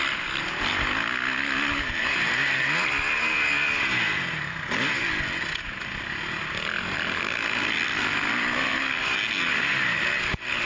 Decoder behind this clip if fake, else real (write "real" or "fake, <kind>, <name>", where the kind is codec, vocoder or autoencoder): real